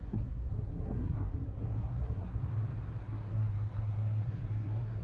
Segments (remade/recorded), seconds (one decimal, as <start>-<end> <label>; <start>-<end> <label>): 0.0-2.4 remade; 2.4-3.0 recorded; 3.0-5.0 remade